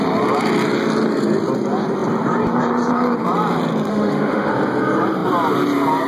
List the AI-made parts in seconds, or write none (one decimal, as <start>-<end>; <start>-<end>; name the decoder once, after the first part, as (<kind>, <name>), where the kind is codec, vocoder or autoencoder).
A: 3.9-4.5 (autoencoder, DAC-VAE)